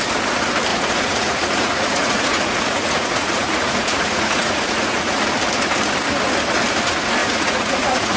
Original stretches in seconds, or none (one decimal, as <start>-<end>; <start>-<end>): 0.0-0.7; 5.2-7.2